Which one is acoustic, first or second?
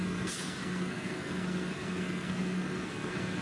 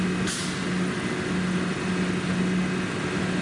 second